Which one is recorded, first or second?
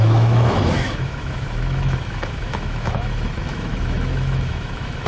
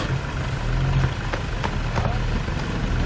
second